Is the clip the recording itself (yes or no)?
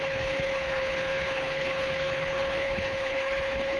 no